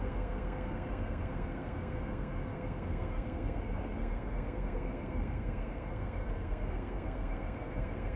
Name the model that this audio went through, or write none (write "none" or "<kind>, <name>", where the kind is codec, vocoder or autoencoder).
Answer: codec, SNAC